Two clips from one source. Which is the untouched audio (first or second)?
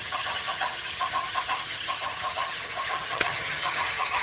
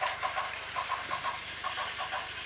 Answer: second